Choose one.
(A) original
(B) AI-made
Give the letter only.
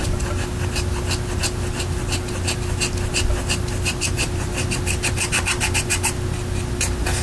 A